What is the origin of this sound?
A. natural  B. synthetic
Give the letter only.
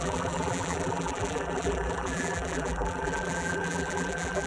B